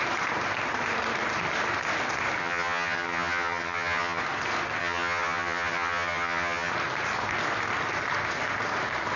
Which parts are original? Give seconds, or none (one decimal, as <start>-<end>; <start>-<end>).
0.0-2.4; 4.2-4.8; 6.7-9.2